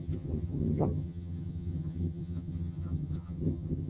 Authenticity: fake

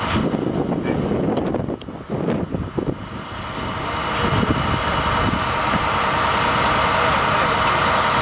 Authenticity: real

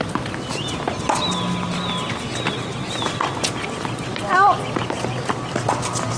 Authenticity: real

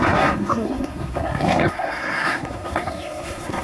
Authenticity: fake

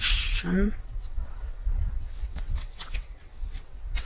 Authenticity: fake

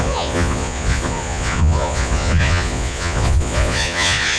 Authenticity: fake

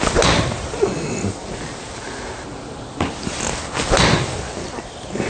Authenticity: real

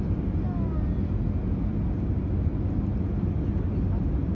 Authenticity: real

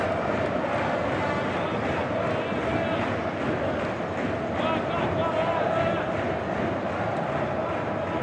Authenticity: real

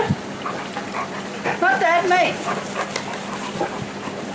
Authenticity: real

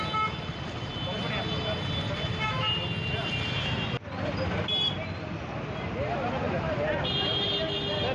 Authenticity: real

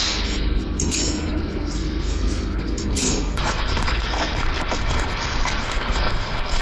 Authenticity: fake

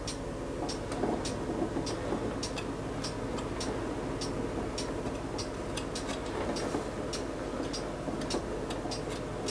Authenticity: real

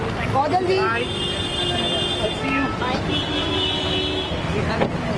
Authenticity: real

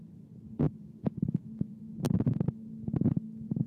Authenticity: real